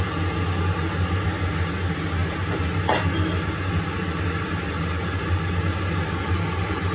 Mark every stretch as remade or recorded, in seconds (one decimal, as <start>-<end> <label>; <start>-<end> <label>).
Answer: 0.0-6.9 recorded

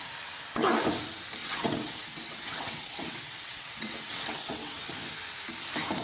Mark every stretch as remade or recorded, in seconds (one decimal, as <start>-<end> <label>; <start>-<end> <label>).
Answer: 0.0-1.4 recorded; 1.4-4.9 remade; 4.9-6.0 recorded

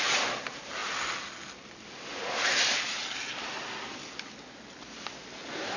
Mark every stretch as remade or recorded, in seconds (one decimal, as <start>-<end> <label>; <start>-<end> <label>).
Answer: 0.0-5.8 recorded

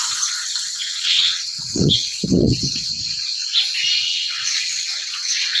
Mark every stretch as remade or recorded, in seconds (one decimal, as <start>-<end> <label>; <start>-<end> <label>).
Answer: 0.0-0.7 recorded; 0.7-2.9 remade; 2.9-4.0 recorded; 4.0-5.6 remade